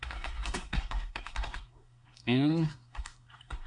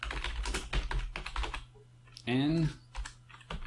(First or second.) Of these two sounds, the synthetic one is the first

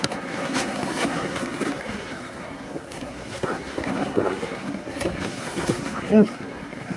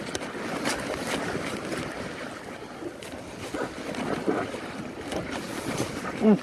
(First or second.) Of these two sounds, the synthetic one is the first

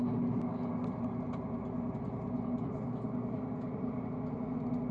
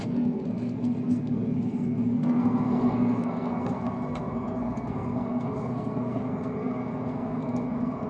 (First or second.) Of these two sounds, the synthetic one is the second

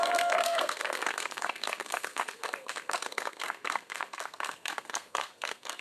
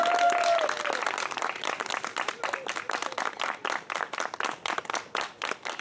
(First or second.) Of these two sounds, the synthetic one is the first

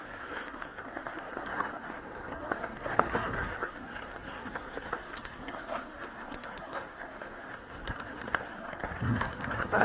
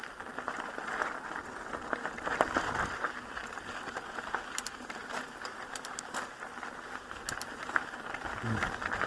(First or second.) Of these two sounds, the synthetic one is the first